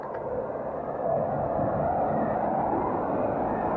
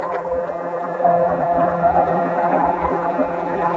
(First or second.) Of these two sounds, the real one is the first